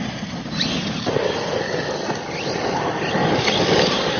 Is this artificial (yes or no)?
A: no